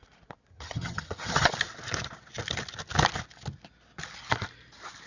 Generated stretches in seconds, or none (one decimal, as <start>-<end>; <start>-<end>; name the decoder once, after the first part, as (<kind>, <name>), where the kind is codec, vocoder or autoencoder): 0.5-1.5 (vocoder, HiFi-GAN)